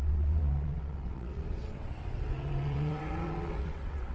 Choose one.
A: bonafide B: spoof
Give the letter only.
B